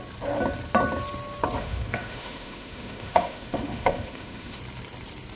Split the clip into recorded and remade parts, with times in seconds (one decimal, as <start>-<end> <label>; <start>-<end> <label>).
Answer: 0.0-1.6 recorded; 1.6-4.6 remade; 4.6-5.3 recorded